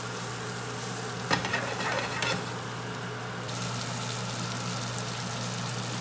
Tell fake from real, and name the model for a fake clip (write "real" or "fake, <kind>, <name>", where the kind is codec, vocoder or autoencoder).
real